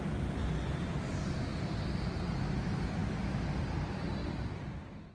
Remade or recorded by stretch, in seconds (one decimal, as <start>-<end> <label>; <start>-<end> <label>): 0.0-0.4 recorded; 0.4-1.0 remade; 1.0-1.5 recorded; 1.5-2.3 remade; 2.3-4.2 recorded; 4.2-5.1 remade